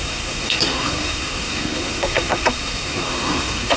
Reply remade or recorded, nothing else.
remade